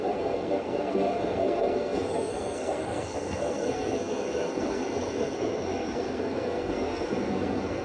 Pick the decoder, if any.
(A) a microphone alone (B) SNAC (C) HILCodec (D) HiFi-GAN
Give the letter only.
B